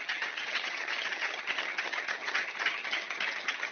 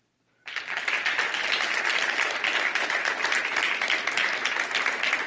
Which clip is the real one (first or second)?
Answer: second